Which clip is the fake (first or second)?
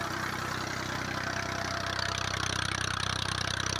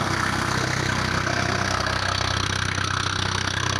second